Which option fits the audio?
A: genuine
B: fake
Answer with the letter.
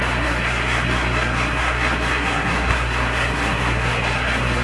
B